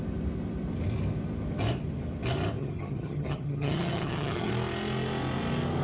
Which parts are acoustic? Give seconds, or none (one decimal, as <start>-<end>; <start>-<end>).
0.0-2.6; 4.5-5.8